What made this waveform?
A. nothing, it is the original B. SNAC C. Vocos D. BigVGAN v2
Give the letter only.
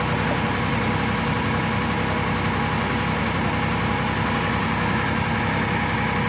A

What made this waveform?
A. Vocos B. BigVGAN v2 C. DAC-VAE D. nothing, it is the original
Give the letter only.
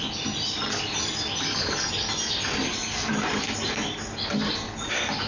D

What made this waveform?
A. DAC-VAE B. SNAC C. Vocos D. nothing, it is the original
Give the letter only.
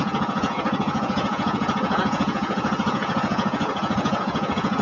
C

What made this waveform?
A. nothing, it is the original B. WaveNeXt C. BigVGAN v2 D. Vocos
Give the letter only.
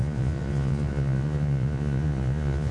D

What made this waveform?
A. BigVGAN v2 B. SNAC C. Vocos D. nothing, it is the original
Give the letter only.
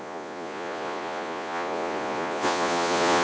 C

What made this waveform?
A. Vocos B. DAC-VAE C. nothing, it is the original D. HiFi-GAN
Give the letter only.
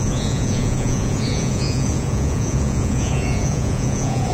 A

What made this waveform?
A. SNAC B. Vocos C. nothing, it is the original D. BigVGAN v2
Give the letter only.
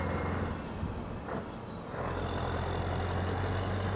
C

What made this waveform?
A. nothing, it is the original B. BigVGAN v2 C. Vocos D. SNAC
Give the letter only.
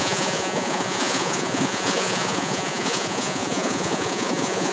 C